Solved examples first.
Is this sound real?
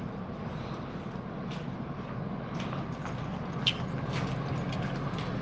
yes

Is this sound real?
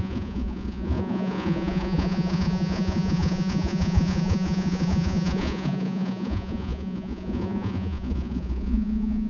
no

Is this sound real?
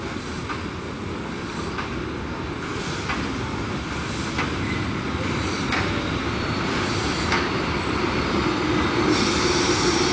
yes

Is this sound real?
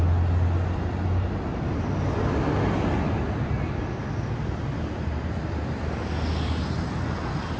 yes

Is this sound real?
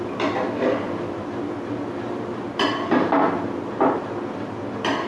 yes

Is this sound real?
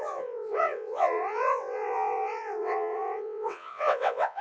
no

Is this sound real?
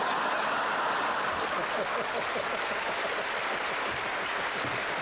yes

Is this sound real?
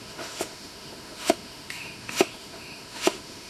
no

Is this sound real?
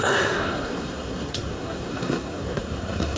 no